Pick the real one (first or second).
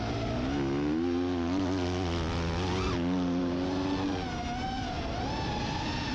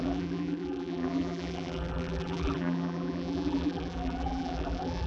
first